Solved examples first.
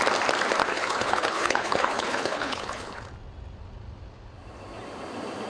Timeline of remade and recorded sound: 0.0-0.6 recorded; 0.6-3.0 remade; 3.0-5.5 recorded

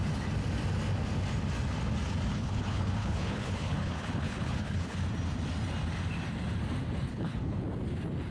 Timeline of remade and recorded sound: 0.0-2.3 recorded; 2.3-5.0 remade; 5.0-7.1 recorded; 7.1-7.6 remade; 7.6-8.3 recorded

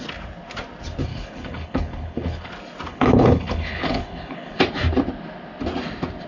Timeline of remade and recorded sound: 0.0-1.1 recorded; 1.1-2.5 remade; 2.5-2.9 recorded; 2.9-4.6 remade; 4.6-6.3 recorded

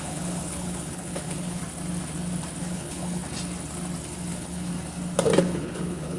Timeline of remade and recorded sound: 0.0-1.6 remade; 1.6-2.6 recorded; 2.6-3.2 remade; 3.2-4.3 recorded; 4.3-4.7 remade; 4.7-5.4 recorded; 5.4-6.2 remade

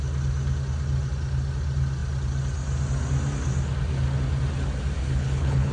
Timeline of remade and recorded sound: 0.0-5.0 recorded; 5.0-5.7 remade

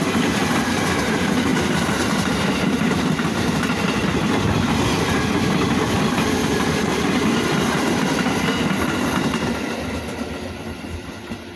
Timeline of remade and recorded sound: 0.0-11.6 recorded